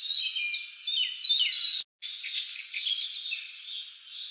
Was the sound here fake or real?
real